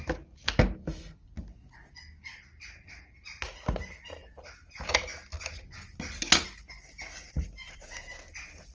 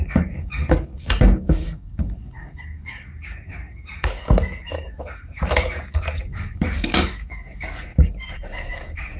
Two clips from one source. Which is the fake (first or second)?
second